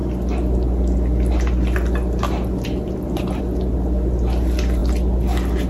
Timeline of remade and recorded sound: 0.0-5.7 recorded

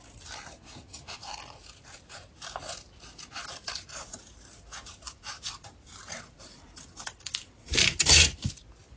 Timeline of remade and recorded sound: 0.0-3.9 recorded; 3.9-8.5 remade; 8.5-9.0 recorded

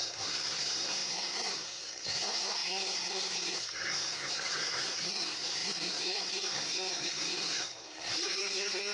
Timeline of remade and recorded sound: 0.0-8.9 remade

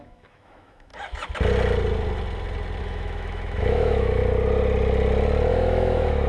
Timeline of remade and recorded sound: 0.0-0.9 remade; 0.9-2.8 recorded; 2.8-4.2 remade; 4.2-5.5 recorded; 5.5-6.3 remade

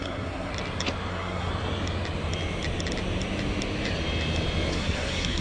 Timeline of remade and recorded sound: 0.0-0.5 remade; 0.5-1.1 recorded; 1.1-1.5 remade; 1.5-4.7 recorded; 4.7-5.4 remade